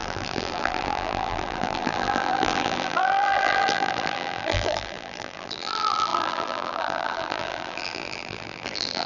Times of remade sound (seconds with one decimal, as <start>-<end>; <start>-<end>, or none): 0.0-9.1